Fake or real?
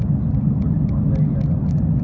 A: real